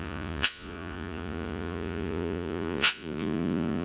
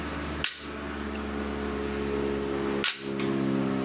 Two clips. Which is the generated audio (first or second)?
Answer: first